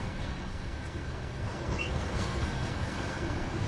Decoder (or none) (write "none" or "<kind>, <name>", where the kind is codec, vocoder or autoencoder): codec, SNAC